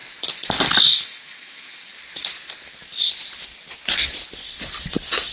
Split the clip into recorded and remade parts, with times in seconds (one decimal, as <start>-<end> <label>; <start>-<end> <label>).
0.0-0.8 recorded; 0.8-1.9 remade; 1.9-5.3 recorded